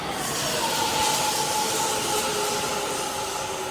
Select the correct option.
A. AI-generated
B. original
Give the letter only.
B